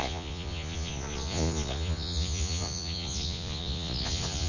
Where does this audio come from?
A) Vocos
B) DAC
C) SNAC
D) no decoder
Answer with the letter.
A